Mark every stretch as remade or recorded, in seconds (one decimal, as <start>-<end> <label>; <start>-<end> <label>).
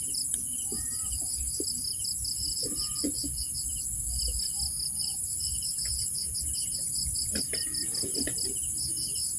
0.0-2.5 recorded; 2.5-3.1 remade; 3.1-5.0 recorded; 5.0-7.4 remade; 7.4-9.4 recorded